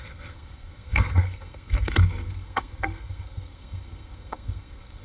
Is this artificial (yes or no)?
yes